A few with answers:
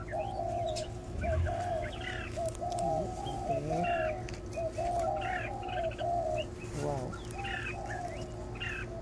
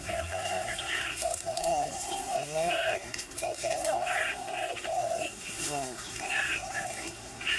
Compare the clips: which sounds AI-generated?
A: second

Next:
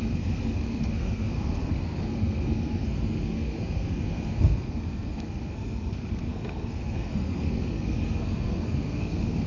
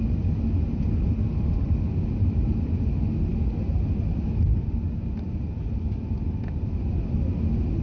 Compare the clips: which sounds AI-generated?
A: first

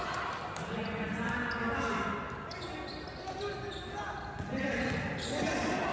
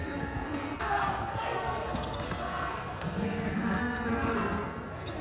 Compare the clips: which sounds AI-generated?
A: second